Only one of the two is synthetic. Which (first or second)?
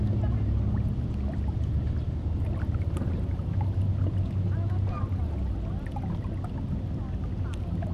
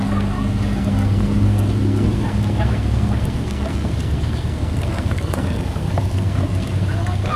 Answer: second